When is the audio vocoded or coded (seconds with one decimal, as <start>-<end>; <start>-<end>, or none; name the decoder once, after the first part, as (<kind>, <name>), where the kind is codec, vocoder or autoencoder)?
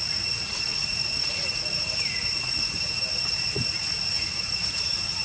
0.0-3.0 (vocoder, Vocos); 4.1-5.2